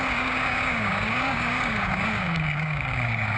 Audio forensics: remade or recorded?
remade